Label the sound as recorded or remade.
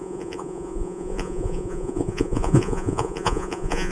remade